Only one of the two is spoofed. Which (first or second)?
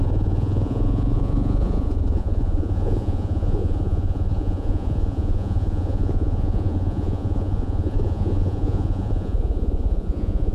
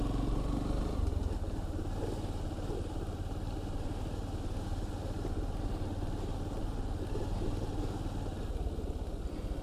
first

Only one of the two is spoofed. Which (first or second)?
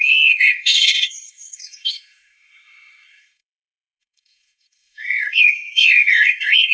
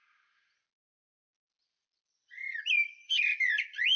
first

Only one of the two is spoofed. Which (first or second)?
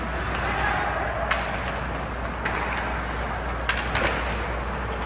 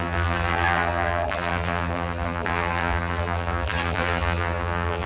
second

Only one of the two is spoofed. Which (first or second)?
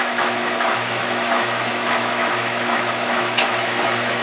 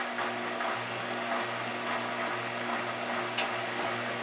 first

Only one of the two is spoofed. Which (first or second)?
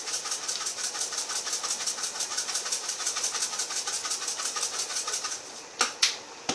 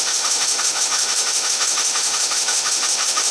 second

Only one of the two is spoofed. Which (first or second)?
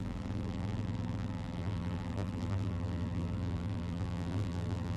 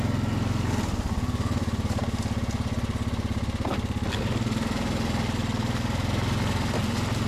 first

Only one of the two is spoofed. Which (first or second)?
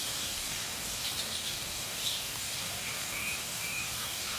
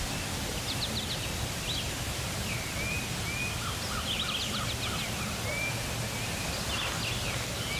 first